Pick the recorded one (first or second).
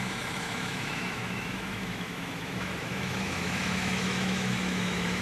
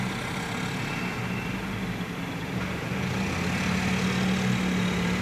second